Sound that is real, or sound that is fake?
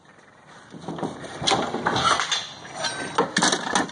real